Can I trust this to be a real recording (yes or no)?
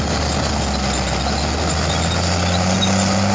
yes